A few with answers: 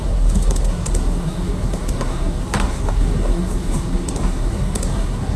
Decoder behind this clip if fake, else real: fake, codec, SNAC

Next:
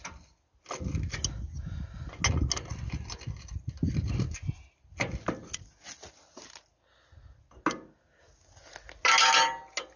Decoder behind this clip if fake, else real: real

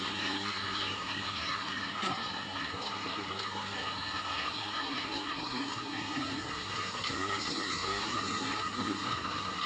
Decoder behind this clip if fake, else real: fake, codec, SNAC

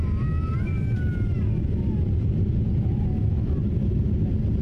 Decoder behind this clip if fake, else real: real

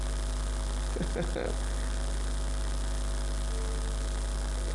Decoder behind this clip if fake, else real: real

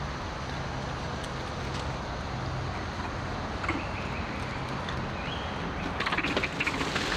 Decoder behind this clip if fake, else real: real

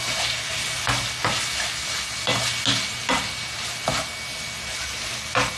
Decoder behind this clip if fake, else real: real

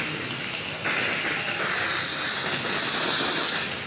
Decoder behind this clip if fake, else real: real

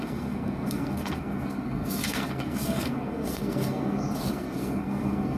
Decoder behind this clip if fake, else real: fake, codec, SNAC